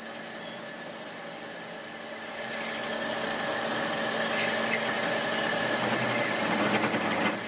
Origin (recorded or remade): recorded